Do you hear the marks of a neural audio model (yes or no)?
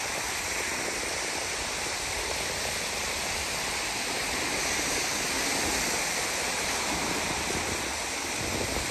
no